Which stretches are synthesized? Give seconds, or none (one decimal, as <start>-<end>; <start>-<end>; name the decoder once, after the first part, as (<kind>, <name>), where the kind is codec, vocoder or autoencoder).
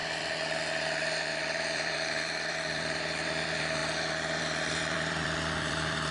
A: 1.4-3.8 (vocoder, BigVGAN v2); 4.4-6.1